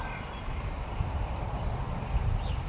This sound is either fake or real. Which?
real